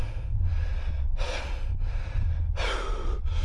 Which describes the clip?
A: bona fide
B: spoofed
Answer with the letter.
A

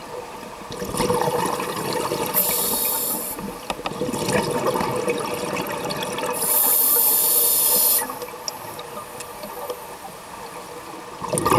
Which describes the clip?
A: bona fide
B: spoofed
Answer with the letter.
A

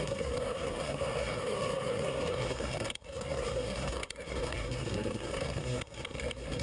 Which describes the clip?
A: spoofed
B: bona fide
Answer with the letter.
A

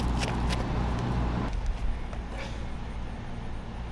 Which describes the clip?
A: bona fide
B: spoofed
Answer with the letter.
A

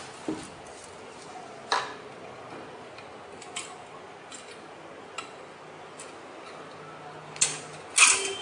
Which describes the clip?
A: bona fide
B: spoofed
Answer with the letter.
A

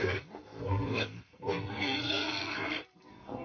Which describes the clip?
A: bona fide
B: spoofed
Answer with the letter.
B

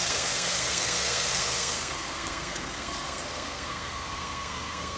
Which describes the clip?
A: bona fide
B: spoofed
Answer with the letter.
B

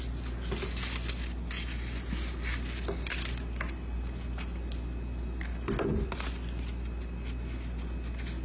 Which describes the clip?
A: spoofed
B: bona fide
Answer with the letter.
B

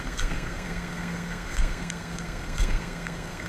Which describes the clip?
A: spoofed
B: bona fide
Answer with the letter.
A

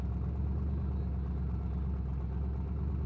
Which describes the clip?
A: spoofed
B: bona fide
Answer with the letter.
B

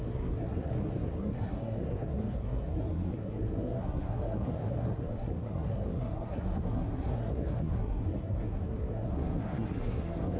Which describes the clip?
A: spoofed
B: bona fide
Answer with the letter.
A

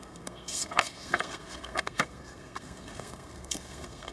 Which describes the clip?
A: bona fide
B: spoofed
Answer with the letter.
B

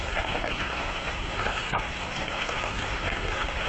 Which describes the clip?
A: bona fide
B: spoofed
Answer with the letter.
B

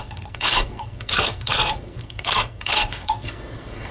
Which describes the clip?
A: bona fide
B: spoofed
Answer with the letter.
B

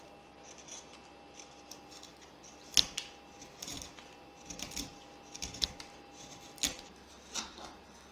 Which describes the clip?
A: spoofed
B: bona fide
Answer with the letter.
B